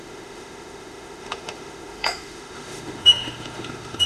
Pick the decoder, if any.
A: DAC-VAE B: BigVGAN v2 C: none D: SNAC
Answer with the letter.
A